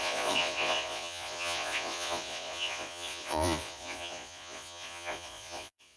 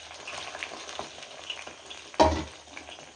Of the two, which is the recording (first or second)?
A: second